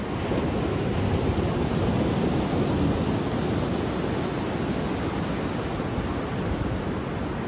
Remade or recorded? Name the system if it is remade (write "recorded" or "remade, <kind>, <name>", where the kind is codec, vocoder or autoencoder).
recorded